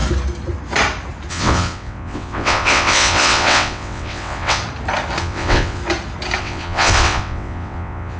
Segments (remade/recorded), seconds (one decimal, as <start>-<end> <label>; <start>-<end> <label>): 0.0-1.3 recorded; 1.3-4.6 remade; 4.6-5.2 recorded; 5.2-5.8 remade; 5.8-6.4 recorded; 6.4-8.2 remade